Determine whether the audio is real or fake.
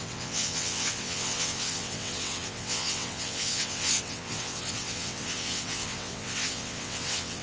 fake